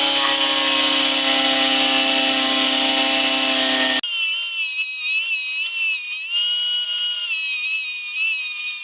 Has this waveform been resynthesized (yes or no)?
no